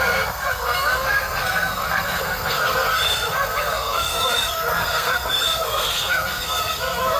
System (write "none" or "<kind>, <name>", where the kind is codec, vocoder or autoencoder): codec, SNAC